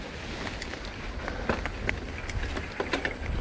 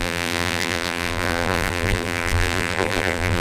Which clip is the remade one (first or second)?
second